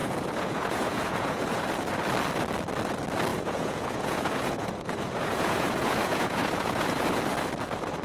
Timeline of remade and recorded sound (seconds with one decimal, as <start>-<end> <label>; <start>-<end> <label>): 0.0-1.6 remade; 1.6-3.3 recorded; 3.3-7.2 remade; 7.2-8.0 recorded